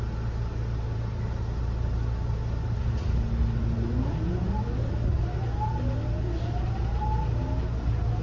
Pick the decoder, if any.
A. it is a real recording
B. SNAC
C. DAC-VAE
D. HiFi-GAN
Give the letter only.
A